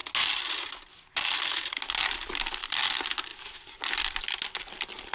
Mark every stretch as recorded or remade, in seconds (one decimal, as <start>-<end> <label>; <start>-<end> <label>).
0.0-5.1 recorded